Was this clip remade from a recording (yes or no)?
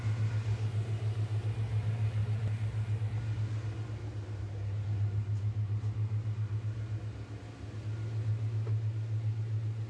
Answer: no